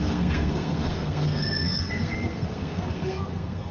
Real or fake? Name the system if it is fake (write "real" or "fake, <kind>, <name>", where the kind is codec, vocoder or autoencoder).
fake, codec, SNAC